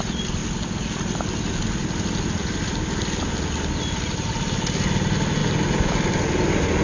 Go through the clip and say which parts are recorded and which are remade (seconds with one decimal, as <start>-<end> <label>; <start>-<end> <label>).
0.0-6.8 recorded